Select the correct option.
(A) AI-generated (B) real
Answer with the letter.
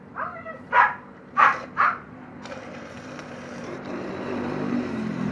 A